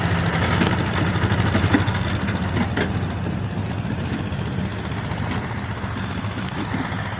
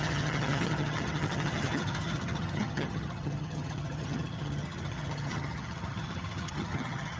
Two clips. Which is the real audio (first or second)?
first